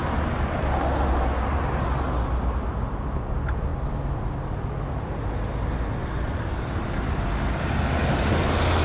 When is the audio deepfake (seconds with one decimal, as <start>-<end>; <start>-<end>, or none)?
0.0-0.7